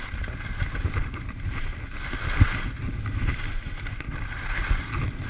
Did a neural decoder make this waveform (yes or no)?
no